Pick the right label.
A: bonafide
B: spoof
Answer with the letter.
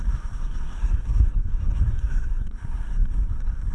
B